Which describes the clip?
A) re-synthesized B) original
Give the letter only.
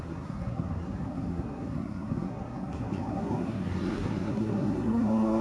A